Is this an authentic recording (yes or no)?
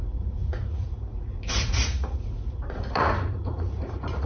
no